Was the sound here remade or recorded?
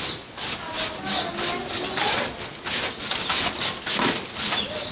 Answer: recorded